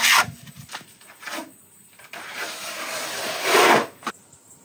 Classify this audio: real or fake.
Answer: real